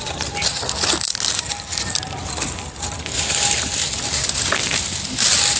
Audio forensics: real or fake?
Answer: real